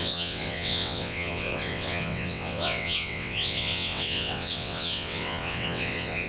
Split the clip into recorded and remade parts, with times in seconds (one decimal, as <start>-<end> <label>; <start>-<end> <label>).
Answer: 0.0-6.3 remade